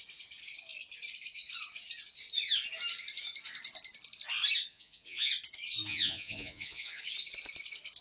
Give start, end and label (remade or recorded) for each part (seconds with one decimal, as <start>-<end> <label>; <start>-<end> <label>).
0.0-4.7 recorded; 4.7-5.3 remade; 5.3-5.9 recorded; 5.9-7.0 remade; 7.0-8.0 recorded